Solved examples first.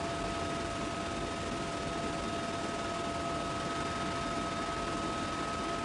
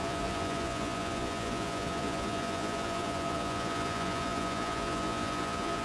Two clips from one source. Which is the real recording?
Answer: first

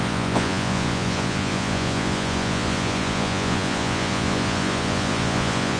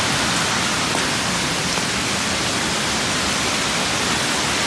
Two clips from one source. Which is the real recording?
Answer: second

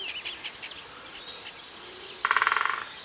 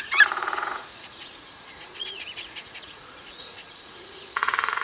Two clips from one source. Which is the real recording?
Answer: first